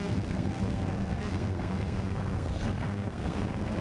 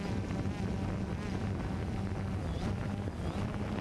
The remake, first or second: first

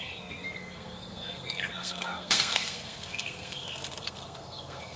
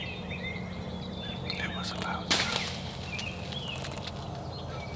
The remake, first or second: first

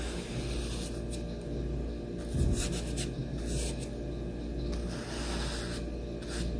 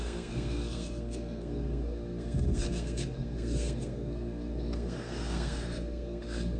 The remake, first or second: second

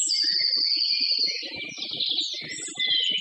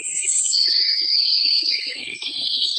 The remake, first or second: second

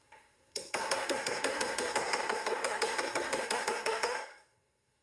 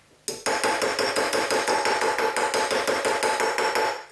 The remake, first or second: first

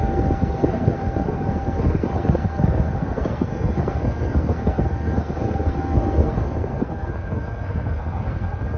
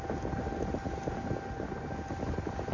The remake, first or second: first